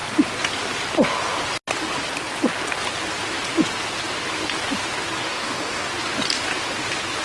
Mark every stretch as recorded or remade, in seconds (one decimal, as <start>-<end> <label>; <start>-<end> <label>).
0.0-5.2 recorded; 5.2-5.9 remade; 5.9-7.2 recorded